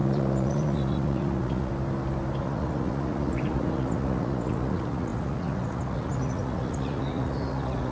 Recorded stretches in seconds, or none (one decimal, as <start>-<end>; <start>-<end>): 1.7-2.4